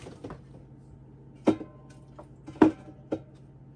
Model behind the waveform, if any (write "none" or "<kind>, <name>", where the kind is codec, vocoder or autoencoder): none